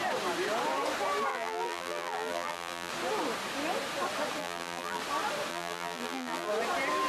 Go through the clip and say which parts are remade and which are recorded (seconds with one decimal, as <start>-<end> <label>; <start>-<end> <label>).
0.0-1.3 recorded; 1.3-2.9 remade; 2.9-4.4 recorded; 4.4-5.0 remade; 5.0-5.5 recorded; 5.5-6.5 remade; 6.5-7.1 recorded